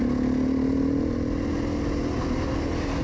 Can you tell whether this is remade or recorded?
recorded